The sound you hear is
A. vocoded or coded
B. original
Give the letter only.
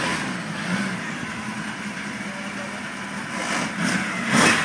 B